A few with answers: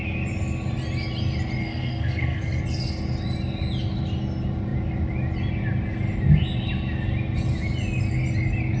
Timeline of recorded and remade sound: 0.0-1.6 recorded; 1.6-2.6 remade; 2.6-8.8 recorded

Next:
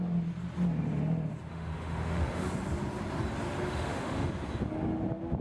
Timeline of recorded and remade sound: 0.0-1.5 recorded; 1.5-2.5 remade; 2.5-3.7 recorded; 3.7-4.3 remade; 4.3-5.4 recorded

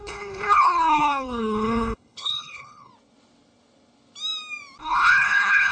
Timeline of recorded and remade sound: 0.0-2.9 remade; 2.9-4.8 recorded; 4.8-5.7 remade

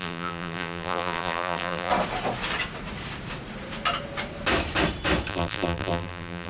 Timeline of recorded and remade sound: 0.0-1.9 remade; 1.9-5.3 recorded; 5.3-6.5 remade

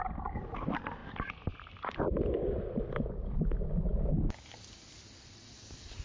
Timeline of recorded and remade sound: 0.0-6.0 recorded

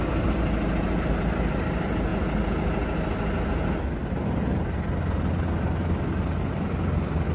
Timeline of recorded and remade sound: 0.0-7.3 recorded